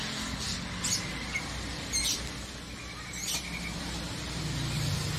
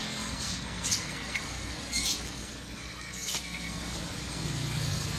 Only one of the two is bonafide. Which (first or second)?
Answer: first